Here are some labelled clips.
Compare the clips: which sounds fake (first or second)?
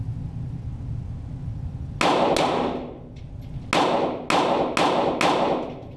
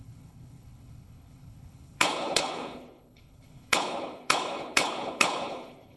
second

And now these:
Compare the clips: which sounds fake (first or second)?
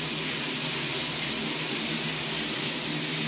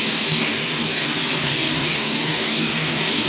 second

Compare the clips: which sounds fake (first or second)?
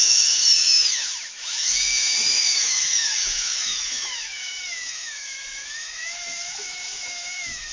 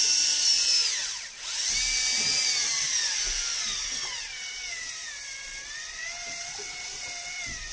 first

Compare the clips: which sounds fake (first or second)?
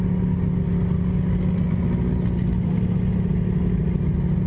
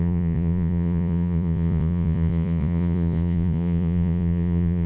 second